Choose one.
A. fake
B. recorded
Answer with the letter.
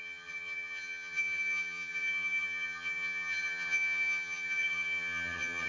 A